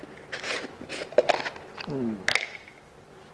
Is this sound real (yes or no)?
yes